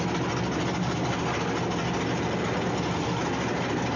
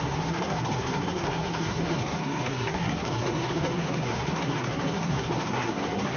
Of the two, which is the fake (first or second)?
second